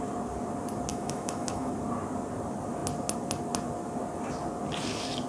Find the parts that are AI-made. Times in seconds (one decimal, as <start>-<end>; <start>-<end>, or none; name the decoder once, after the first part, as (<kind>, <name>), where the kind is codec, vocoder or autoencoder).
0.9-1.7 (autoencoder, DAC-VAE)